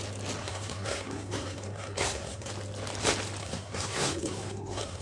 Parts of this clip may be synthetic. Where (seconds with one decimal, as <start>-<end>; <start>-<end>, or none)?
0.4-2.5; 3.4-5.0